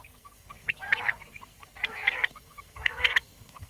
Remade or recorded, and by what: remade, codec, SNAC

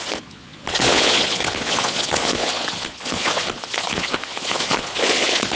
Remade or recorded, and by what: remade, vocoder, Vocos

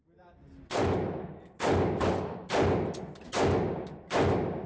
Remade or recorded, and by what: recorded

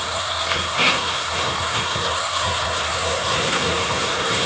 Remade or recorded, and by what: remade, codec, SNAC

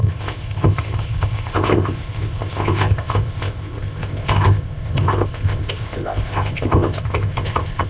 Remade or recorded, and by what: remade, codec, ZipCodec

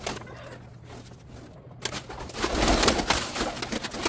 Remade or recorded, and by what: recorded